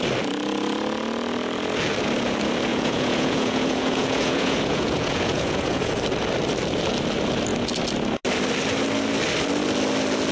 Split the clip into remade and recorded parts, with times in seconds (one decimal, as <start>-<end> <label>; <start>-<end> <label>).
0.0-2.7 recorded; 2.7-5.9 remade; 5.9-10.3 recorded